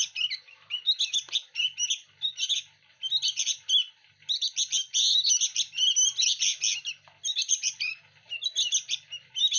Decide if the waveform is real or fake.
real